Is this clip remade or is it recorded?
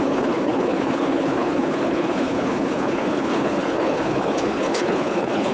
remade